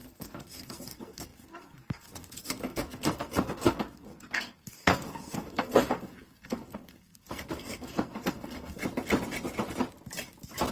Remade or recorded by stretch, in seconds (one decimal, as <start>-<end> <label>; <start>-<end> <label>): 0.0-8.8 remade; 8.8-10.7 recorded